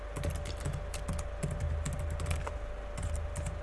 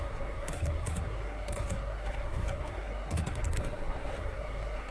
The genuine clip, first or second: first